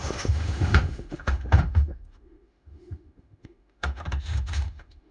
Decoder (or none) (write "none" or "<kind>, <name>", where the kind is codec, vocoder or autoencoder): autoencoder, DAC-VAE